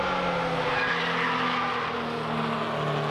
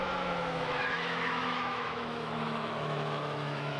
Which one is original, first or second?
first